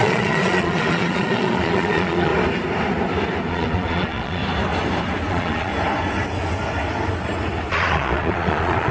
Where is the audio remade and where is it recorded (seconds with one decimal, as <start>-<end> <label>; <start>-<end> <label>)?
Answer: 0.0-2.3 remade; 2.3-3.5 recorded; 3.5-4.4 remade; 4.4-5.3 recorded; 5.3-5.7 remade; 5.7-7.7 recorded; 7.7-8.9 remade